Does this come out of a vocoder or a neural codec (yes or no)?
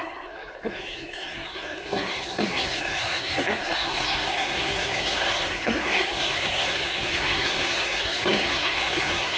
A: yes